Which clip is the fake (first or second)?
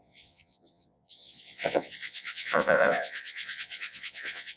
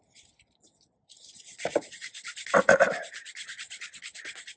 first